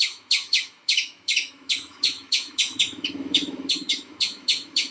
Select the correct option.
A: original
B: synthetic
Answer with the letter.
B